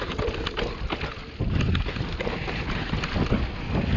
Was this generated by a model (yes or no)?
no